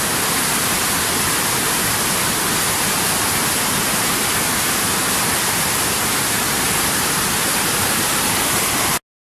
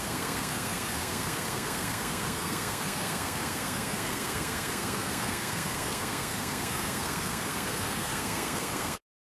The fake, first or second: second